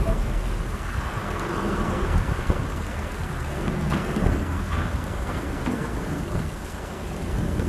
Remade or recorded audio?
remade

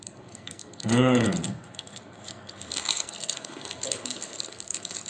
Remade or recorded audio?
remade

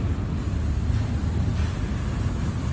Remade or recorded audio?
recorded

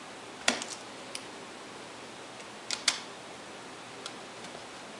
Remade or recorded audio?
recorded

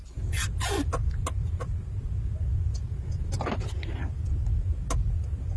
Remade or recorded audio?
recorded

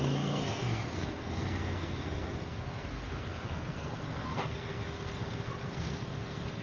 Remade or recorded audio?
remade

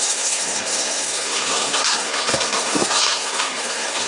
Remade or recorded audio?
remade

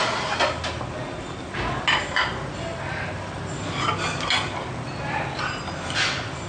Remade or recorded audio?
recorded